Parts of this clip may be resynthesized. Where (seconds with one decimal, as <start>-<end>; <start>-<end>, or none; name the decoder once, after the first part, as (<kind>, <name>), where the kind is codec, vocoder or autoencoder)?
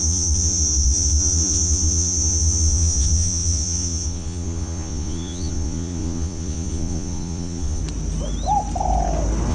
0.0-7.8 (vocoder, Vocos)